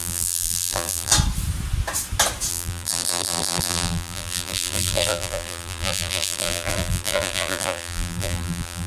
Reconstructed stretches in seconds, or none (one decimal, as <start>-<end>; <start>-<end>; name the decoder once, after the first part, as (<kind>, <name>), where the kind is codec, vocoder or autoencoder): 0.0-1.1 (vocoder, BigVGAN v2); 2.5-8.9